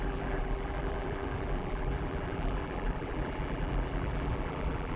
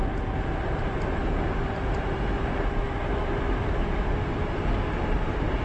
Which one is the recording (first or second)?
second